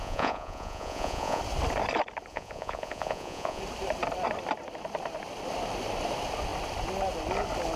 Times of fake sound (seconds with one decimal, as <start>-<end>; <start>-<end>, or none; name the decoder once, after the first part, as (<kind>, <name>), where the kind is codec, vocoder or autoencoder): 0.0-1.4 (vocoder, Vocos); 2.3-3.6